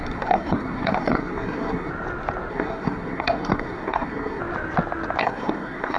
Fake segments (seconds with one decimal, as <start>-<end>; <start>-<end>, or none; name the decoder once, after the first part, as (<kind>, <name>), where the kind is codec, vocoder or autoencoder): 0.0-1.9 (codec, SNAC); 2.5-4.4; 5.2-6.0